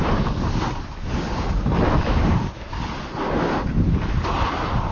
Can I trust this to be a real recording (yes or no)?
yes